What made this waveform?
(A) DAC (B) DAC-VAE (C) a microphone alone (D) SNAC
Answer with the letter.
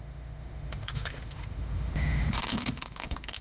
B